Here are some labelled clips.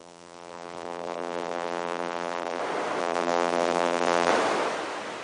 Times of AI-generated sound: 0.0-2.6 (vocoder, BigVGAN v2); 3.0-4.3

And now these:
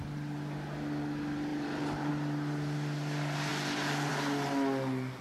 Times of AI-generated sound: 1.5-2.1 (vocoder, BigVGAN v2)

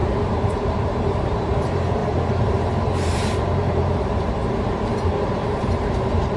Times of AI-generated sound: 0.0-4.4 (vocoder, BigVGAN v2); 5.3-6.4

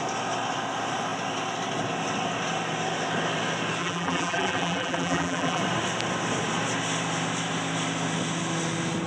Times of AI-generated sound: 3.8-5.6 (vocoder, BigVGAN v2)

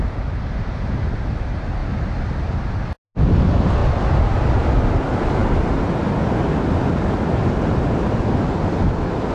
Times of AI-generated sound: none

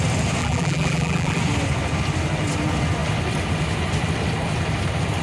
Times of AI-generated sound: 0.4-1.4 (vocoder, BigVGAN v2)

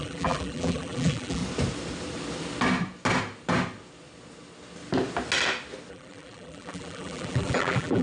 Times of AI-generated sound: 0.0-1.4 (vocoder, BigVGAN v2); 5.9-8.0